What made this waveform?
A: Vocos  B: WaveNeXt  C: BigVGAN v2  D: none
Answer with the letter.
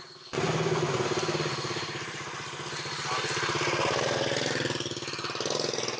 D